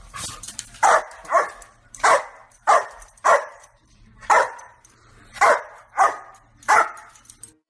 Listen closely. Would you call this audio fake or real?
fake